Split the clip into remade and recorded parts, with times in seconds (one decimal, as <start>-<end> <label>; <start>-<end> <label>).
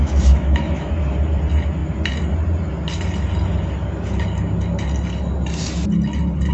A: 0.0-0.9 remade; 0.9-6.5 recorded